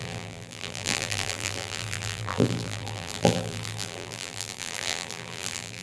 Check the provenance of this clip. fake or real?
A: fake